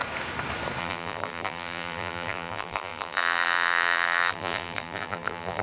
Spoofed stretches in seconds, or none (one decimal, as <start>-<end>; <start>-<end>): 0.8-5.6